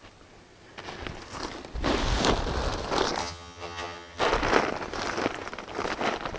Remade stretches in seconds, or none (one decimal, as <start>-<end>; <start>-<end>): 3.2-4.2